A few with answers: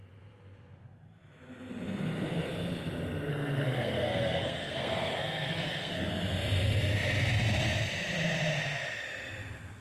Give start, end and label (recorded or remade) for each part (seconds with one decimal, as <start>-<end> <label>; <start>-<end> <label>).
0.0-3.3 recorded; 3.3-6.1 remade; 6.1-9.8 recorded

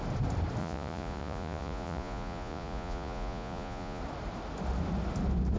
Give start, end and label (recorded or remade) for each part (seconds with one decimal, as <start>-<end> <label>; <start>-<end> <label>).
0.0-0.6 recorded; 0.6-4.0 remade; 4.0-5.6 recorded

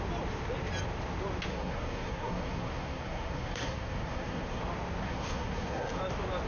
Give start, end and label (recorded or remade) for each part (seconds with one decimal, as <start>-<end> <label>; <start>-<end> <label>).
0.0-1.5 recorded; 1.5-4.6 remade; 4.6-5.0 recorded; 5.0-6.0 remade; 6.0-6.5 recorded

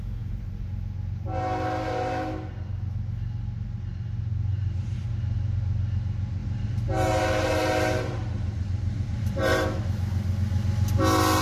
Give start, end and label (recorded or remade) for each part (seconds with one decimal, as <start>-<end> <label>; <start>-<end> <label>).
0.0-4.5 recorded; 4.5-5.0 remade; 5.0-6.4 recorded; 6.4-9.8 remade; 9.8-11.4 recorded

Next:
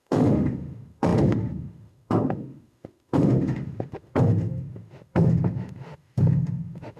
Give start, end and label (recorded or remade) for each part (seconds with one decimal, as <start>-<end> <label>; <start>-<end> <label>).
0.0-7.0 remade